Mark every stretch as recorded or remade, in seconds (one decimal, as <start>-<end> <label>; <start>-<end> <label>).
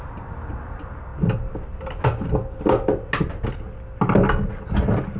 0.0-5.2 recorded